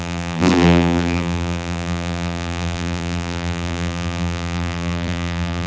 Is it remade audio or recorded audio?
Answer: remade